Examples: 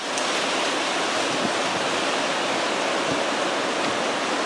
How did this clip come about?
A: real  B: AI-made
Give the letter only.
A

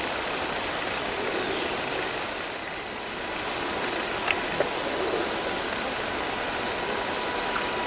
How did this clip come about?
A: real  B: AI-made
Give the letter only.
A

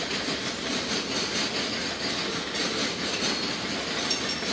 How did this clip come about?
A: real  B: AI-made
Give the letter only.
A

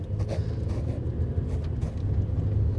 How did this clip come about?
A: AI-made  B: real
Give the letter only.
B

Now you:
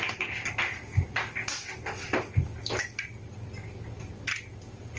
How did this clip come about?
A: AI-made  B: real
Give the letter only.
B